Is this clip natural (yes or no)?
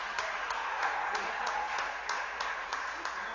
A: no